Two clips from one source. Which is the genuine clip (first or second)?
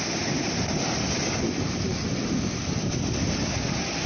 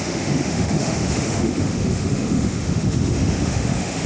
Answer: first